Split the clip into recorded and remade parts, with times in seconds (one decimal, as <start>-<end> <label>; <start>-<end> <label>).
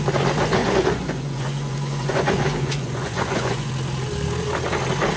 0.0-0.6 recorded; 0.6-3.7 remade; 3.7-5.2 recorded